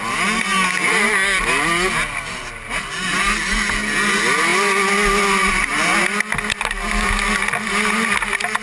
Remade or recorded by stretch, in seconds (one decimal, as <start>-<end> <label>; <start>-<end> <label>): 0.0-8.6 recorded